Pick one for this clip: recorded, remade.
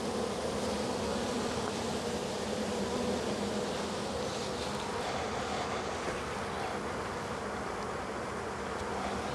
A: recorded